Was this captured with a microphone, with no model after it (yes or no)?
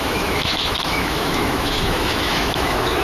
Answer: no